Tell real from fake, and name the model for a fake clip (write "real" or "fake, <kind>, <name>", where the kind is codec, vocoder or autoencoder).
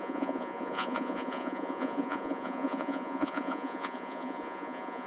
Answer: fake, vocoder, Vocos